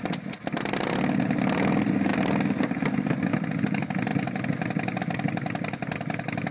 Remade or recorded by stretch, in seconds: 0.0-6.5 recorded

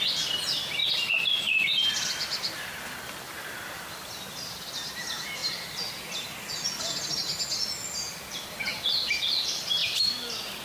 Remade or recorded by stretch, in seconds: 0.0-0.8 recorded; 0.8-4.2 remade; 4.2-9.8 recorded; 9.8-10.6 remade

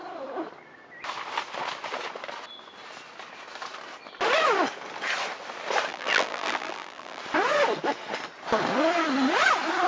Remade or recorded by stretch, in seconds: 0.0-5.9 recorded; 5.9-7.2 remade; 7.2-9.9 recorded

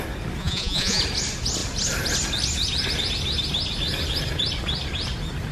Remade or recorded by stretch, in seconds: 0.0-0.4 recorded; 0.4-1.0 remade; 1.0-5.5 recorded

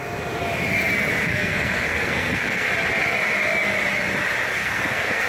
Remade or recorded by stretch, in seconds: 0.0-1.2 recorded; 1.2-2.7 remade; 2.7-4.5 recorded; 4.5-5.3 remade